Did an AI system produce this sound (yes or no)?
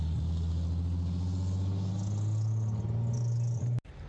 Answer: no